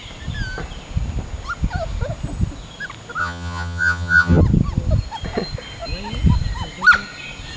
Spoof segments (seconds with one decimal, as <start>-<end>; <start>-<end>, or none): 3.2-4.4